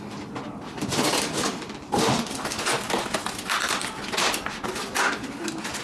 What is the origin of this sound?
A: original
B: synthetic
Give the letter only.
A